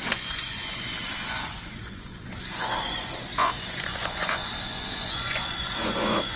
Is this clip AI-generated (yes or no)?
yes